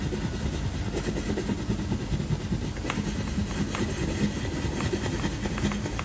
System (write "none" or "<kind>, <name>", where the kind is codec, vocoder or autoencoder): none